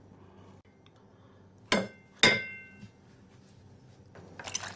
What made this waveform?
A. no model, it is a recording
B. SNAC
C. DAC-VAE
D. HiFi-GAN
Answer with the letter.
A